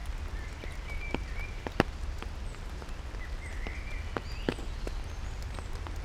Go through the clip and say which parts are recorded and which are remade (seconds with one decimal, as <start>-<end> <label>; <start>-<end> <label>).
0.0-6.0 recorded